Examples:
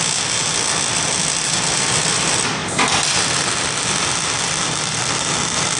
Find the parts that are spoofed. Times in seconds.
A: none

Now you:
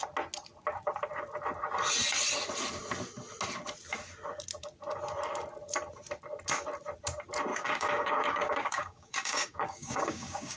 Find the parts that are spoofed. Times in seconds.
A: 7.5-10.6

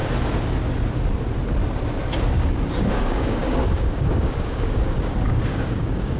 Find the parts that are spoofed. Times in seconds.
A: 2.1-6.2

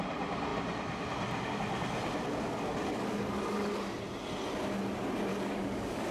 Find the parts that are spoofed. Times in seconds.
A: 2.3-3.7; 5.3-6.1

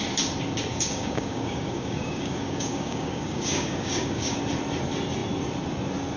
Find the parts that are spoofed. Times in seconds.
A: 0.7-4.4

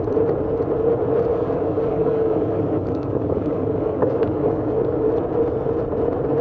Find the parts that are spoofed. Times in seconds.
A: 1.3-5.1

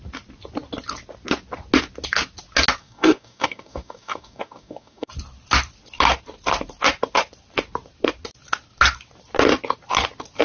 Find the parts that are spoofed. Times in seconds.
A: 2.8-5.1

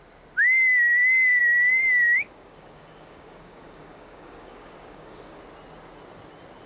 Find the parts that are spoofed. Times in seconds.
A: 1.4-5.4